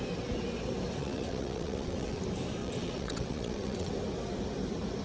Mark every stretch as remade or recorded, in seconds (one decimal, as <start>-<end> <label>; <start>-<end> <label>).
0.0-1.0 recorded; 1.0-2.2 remade; 2.2-2.6 recorded; 2.6-3.9 remade; 3.9-5.0 recorded